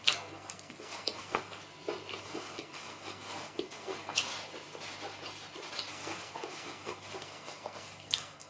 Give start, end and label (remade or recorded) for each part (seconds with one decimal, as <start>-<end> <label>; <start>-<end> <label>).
0.0-1.6 remade; 1.6-2.2 recorded; 2.2-4.3 remade; 4.3-5.9 recorded; 5.9-8.5 remade